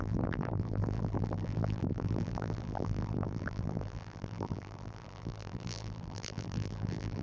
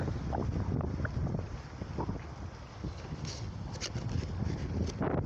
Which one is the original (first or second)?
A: second